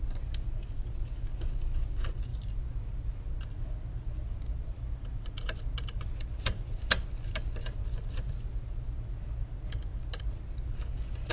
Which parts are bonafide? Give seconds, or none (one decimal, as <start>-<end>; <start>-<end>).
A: 0.0-11.3